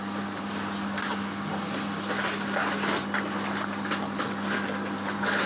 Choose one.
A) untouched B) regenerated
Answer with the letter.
A